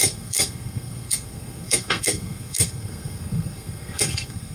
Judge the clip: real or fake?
fake